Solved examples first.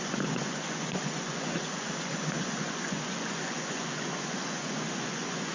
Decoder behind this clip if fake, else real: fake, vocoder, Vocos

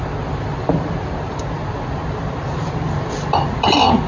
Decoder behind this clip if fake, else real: real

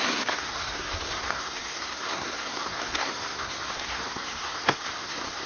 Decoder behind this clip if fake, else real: fake, codec, SNAC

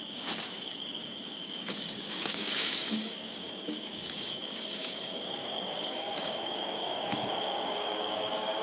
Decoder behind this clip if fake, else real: fake, codec, DAC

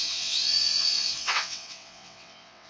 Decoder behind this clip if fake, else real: fake, vocoder, WaveNeXt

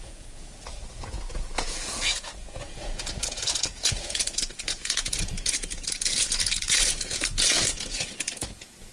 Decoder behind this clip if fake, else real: fake, vocoder, Vocos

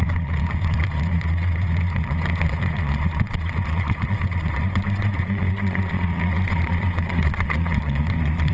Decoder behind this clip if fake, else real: fake, vocoder, Vocos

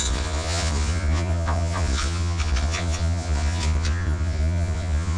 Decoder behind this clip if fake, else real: fake, vocoder, Vocos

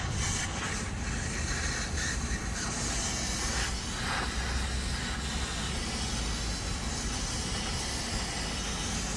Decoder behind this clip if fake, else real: real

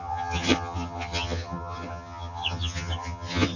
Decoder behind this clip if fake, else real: fake, vocoder, HiFi-GAN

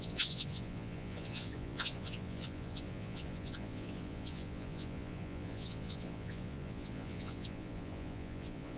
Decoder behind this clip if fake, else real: fake, vocoder, Vocos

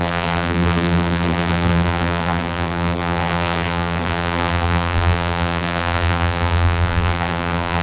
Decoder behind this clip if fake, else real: fake, vocoder, BigVGAN v2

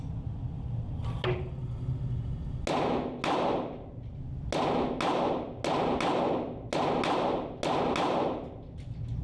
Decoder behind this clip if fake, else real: real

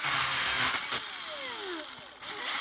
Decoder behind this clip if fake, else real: real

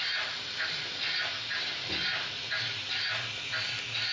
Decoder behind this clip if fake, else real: real